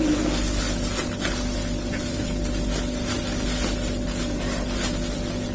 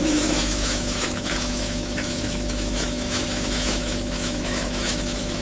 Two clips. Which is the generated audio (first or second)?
second